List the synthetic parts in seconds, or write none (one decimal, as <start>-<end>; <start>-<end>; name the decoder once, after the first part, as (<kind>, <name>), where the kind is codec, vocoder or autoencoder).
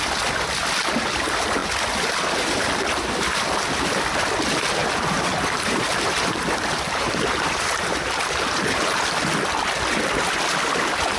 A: 4.8-9.0 (vocoder, BigVGAN v2)